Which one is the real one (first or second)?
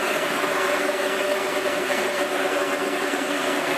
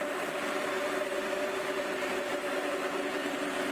second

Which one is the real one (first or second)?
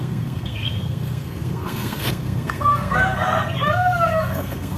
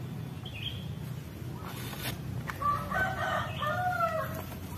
second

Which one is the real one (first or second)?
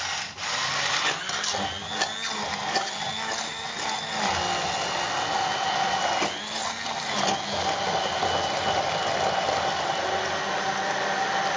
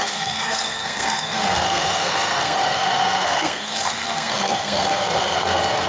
first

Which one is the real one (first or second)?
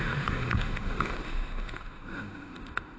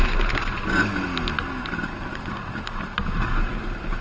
second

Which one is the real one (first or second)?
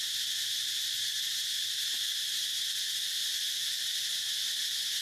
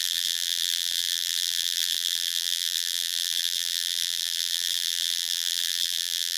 first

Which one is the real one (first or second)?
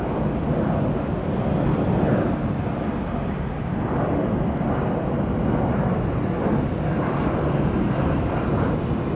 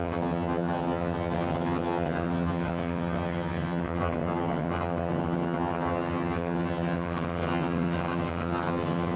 first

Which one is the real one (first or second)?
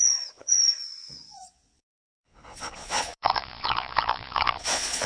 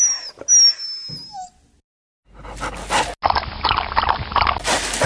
second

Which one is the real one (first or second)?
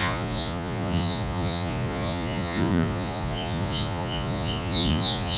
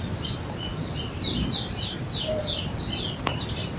second